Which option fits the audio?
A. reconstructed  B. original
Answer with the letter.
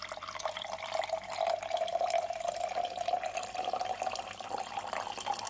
B